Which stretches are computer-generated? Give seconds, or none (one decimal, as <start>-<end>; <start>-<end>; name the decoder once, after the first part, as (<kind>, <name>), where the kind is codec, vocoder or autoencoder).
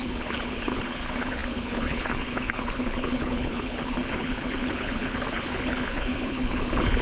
0.0-7.0 (codec, HILCodec)